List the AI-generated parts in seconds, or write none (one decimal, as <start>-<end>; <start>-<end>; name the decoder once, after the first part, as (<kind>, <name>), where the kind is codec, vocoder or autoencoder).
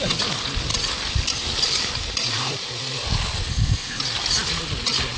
3.5-4.0 (codec, ZipCodec)